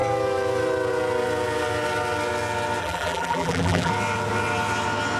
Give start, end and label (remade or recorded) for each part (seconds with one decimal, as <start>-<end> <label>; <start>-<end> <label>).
0.0-2.8 recorded; 2.8-3.9 remade; 3.9-5.2 recorded